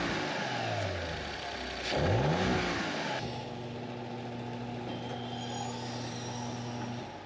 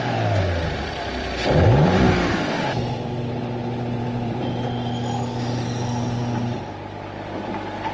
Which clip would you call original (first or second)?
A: first